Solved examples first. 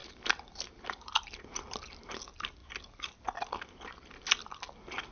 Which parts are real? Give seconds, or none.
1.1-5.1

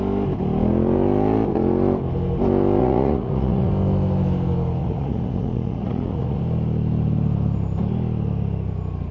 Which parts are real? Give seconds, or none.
0.0-2.8; 3.7-4.8; 6.4-9.1

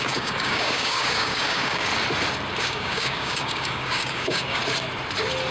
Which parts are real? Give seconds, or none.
1.9-2.6; 4.6-5.5

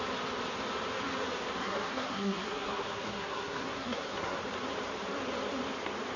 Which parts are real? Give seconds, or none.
0.0-1.6; 4.4-6.2

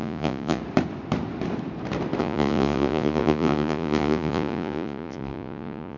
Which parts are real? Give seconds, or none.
0.6-2.2

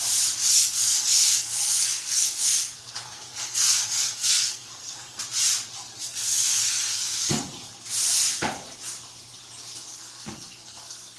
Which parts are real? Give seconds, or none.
0.0-0.4; 5.2-6.0; 7.4-9.9